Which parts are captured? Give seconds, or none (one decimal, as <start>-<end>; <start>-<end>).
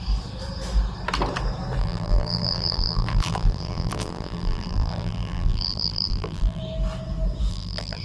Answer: 0.0-1.8; 6.6-7.5